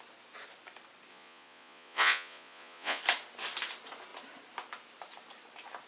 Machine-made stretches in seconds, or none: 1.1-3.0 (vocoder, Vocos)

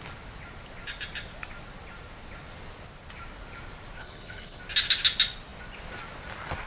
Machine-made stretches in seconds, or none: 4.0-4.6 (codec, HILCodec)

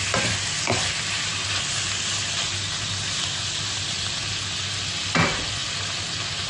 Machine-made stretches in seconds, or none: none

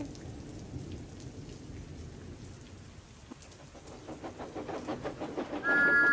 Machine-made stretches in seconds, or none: none

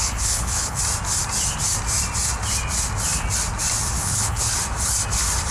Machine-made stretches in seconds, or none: 0.0-0.8 (codec, HILCodec); 4.0-4.5

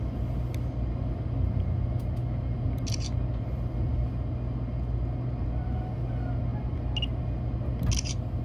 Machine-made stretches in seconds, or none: none